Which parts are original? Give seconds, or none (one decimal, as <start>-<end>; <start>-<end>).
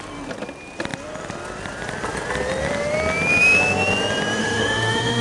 0.0-4.4